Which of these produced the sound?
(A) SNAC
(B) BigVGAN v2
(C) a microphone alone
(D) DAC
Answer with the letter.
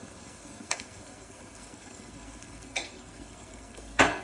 A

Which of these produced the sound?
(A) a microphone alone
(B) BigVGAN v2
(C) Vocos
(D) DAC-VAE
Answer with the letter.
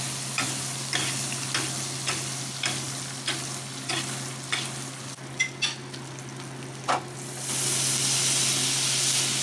A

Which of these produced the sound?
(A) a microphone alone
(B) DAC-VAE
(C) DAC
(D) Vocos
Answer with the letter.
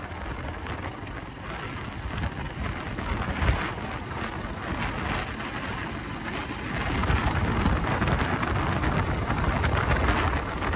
A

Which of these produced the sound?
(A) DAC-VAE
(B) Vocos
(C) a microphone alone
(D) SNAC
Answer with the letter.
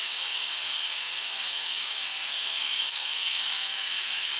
D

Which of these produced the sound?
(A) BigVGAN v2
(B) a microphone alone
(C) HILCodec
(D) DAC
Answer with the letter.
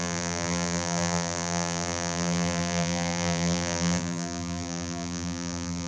A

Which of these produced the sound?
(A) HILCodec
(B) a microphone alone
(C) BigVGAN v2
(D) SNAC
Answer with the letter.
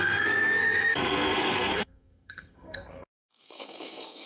D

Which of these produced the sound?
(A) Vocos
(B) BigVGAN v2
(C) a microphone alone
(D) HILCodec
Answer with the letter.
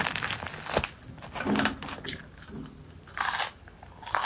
C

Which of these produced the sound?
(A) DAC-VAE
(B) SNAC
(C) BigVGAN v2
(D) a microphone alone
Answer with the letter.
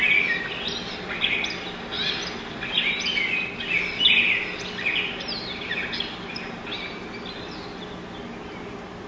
D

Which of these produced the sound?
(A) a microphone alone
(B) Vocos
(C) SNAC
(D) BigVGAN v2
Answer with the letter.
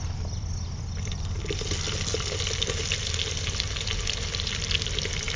A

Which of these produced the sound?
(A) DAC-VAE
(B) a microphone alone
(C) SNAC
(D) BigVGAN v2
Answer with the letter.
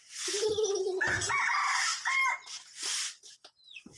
B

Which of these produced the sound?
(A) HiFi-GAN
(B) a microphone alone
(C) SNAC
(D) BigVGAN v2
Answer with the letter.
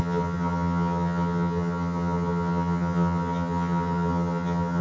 A